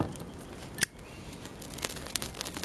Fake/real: real